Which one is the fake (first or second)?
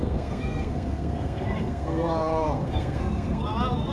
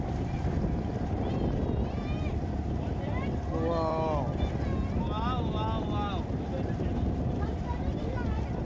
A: first